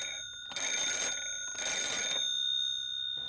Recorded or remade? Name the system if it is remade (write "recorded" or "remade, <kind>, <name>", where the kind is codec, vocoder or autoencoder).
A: recorded